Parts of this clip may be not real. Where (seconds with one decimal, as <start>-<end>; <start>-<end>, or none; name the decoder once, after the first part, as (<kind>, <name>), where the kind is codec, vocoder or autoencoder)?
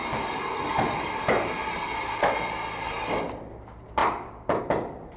none